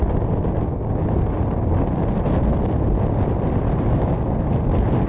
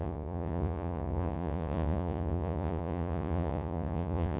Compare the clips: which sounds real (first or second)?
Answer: first